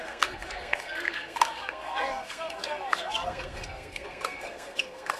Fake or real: fake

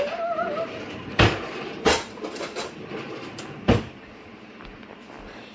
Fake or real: fake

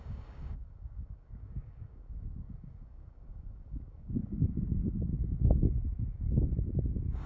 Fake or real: fake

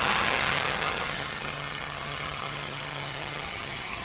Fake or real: fake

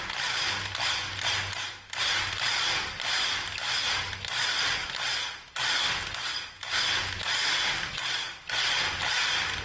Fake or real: real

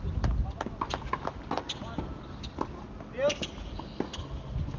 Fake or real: real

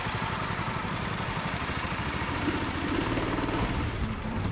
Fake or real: fake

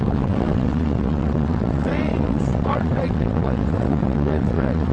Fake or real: fake